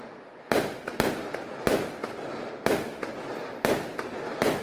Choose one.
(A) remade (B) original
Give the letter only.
B